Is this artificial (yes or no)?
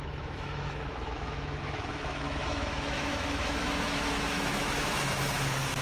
yes